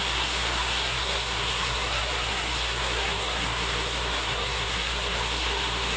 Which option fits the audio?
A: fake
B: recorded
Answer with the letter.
A